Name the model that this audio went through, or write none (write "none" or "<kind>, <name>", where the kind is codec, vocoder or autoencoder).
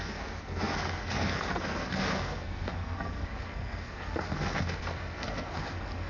codec, SNAC